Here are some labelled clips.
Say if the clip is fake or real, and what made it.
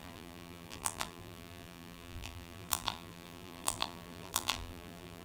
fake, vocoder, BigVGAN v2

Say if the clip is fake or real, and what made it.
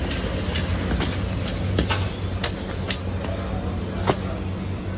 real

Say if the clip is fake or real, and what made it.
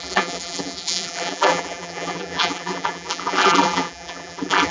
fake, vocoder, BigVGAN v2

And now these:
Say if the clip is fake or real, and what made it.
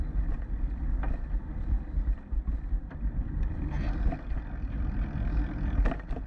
real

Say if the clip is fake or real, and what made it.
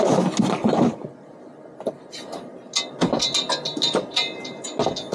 real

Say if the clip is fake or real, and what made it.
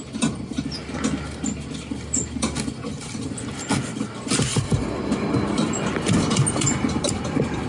real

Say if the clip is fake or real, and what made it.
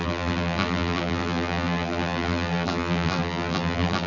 fake, vocoder, BigVGAN v2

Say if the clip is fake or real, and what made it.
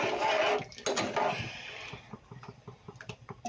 real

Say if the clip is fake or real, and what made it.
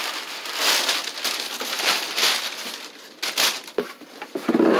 real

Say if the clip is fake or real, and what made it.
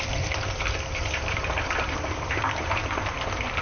fake, vocoder, BigVGAN v2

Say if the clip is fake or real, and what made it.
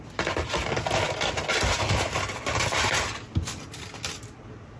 real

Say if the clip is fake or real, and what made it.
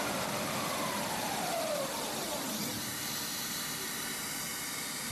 real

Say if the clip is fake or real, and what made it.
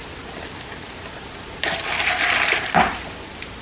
real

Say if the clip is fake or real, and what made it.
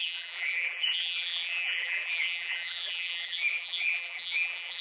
fake, vocoder, BigVGAN v2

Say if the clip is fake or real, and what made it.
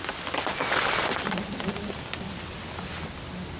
real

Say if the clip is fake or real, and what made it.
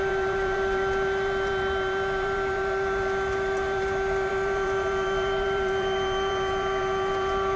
fake, vocoder, BigVGAN v2